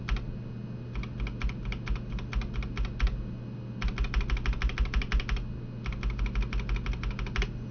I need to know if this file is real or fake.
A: real